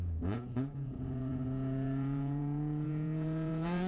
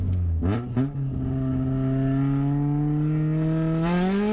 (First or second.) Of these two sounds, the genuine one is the second